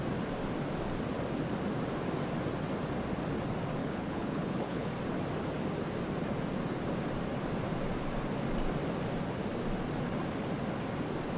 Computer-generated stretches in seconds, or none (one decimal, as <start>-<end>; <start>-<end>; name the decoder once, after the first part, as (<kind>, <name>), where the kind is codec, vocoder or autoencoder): 3.8-4.9 (codec, HILCodec)